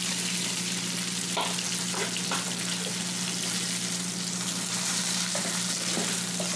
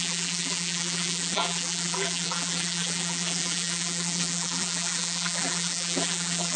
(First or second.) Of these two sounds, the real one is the first